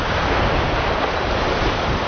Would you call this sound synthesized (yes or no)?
yes